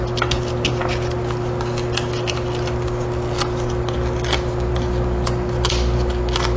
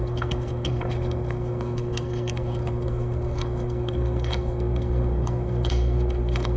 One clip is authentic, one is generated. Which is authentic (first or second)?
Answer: first